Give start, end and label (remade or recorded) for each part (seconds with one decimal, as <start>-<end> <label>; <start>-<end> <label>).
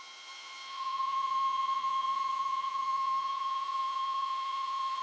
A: 0.0-5.0 remade